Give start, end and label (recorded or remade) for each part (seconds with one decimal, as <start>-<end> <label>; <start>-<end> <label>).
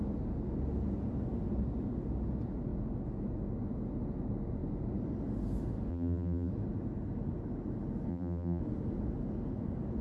0.0-5.9 recorded; 5.9-6.5 remade; 6.5-8.1 recorded; 8.1-8.6 remade; 8.6-10.0 recorded